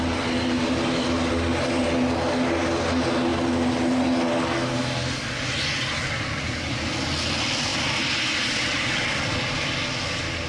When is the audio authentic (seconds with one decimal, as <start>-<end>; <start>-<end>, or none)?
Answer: 0.0-10.5